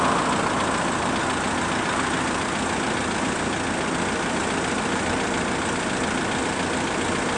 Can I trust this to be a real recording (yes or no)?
yes